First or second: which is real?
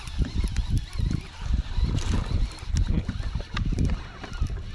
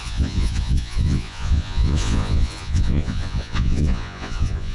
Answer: first